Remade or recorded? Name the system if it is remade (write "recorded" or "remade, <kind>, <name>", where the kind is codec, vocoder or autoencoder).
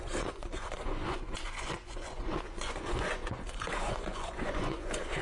remade, vocoder, Vocos